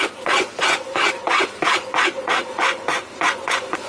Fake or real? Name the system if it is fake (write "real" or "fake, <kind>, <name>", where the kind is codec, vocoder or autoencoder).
fake, vocoder, Vocos